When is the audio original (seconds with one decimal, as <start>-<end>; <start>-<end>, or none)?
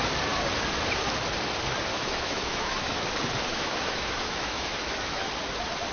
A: 0.0-1.9; 3.0-3.5; 5.3-5.9